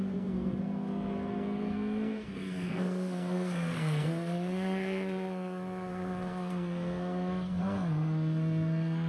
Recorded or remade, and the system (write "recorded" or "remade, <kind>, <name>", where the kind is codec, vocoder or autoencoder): remade, codec, SNAC